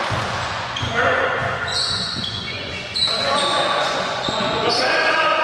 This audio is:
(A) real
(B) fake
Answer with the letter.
B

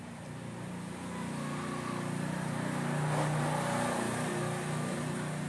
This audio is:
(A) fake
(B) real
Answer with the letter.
B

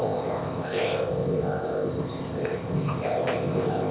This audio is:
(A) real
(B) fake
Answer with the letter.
B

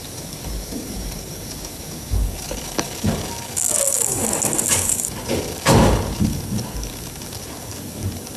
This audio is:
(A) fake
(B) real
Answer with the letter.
A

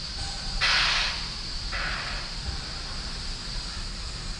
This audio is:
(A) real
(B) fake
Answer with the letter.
A